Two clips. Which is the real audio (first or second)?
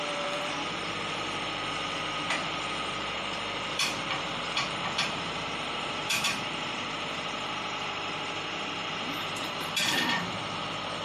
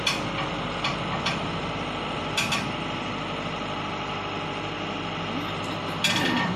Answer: second